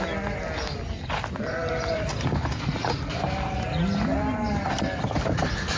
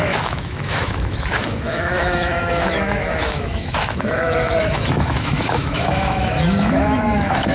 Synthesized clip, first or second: second